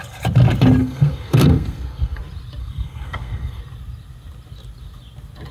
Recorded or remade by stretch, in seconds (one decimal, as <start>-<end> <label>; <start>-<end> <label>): 0.0-0.8 recorded; 0.8-2.2 remade; 2.2-2.6 recorded; 2.6-3.6 remade; 3.6-5.5 recorded